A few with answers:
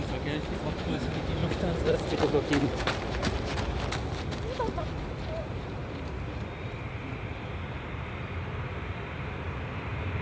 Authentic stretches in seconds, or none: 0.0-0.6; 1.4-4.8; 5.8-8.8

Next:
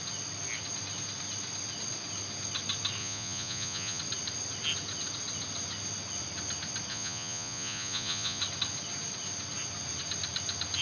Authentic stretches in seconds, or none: 0.0-3.0; 4.0-6.9; 8.4-10.8